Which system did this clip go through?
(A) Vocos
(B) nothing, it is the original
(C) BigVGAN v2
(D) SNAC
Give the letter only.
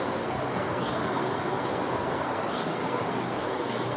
D